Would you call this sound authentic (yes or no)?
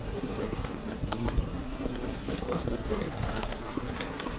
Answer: no